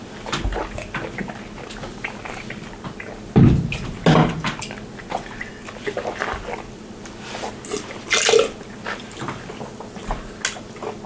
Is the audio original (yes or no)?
yes